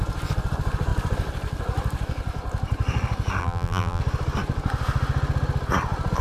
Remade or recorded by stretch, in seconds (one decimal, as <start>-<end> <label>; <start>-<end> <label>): 0.0-3.4 recorded; 3.4-4.0 remade; 4.0-6.2 recorded